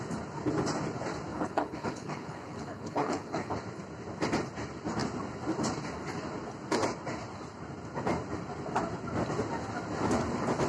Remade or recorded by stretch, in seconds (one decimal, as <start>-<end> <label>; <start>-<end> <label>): 0.0-1.3 recorded; 1.3-3.5 remade; 3.5-10.7 recorded